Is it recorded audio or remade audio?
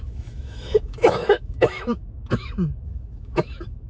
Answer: remade